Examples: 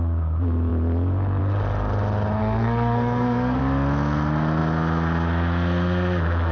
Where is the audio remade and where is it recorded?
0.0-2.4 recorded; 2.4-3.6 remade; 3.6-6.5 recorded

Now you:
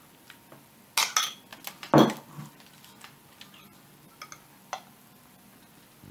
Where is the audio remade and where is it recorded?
0.0-6.1 recorded

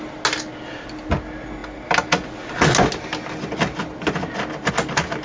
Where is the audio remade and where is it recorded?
0.0-5.2 recorded

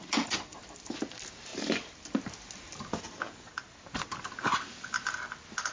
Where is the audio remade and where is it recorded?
0.0-5.7 recorded

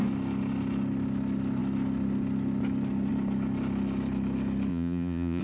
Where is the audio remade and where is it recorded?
0.0-4.7 recorded; 4.7-5.4 remade

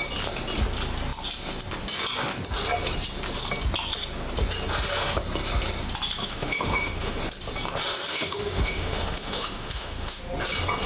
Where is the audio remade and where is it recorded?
0.0-6.2 recorded; 6.2-7.2 remade; 7.2-8.1 recorded; 8.1-10.2 remade; 10.2-10.9 recorded

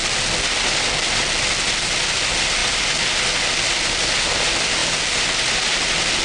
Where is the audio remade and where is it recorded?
0.0-6.2 recorded